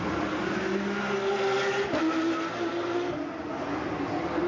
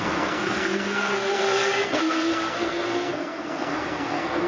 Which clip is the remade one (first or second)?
second